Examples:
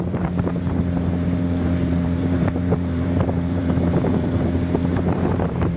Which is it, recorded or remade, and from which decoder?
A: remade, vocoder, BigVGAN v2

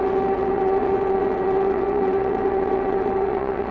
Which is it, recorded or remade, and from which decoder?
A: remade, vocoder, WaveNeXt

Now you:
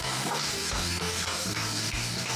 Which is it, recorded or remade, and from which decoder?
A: remade, codec, DAC